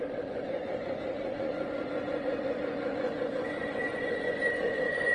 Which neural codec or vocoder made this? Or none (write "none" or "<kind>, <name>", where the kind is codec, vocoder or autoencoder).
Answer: vocoder, Vocos